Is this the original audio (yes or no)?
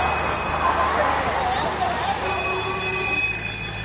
yes